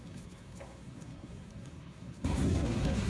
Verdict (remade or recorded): remade